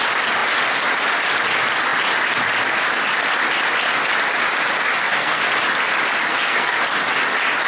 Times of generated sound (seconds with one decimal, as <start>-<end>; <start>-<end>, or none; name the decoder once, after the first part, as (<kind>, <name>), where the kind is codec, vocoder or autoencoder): 5.0-5.5 (codec, SNAC); 6.3-6.8